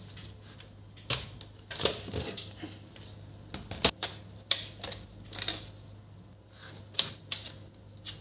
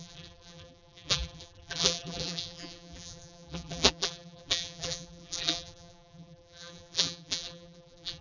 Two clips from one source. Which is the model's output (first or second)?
second